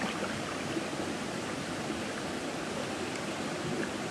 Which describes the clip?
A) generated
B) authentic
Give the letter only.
B